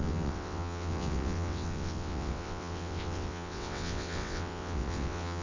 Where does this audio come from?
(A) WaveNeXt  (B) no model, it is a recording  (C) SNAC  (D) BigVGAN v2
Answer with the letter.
A